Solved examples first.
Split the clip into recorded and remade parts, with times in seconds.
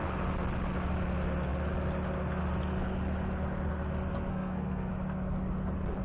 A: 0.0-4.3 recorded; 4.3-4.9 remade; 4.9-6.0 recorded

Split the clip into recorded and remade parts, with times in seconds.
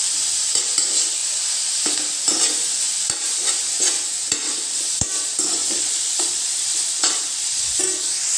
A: 0.0-5.6 recorded; 5.6-7.8 remade; 7.8-8.4 recorded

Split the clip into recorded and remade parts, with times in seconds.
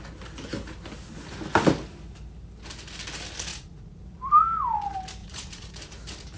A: 0.0-3.5 recorded; 3.5-4.0 remade; 4.0-5.2 recorded; 5.2-5.7 remade; 5.7-6.4 recorded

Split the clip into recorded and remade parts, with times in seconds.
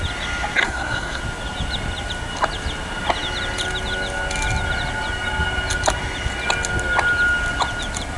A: 0.0-0.6 recorded; 0.6-1.2 remade; 1.2-8.2 recorded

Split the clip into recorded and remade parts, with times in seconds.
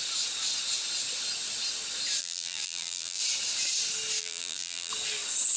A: 0.0-2.2 recorded; 2.2-3.2 remade; 3.2-4.2 recorded; 4.2-4.9 remade; 4.9-5.6 recorded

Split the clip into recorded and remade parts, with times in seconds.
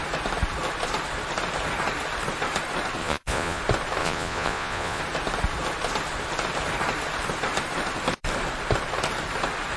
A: 0.0-3.0 recorded; 3.0-3.6 remade; 3.6-4.0 recorded; 4.0-5.0 remade; 5.0-9.8 recorded